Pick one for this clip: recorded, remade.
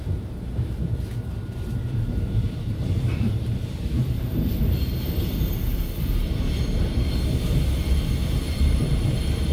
remade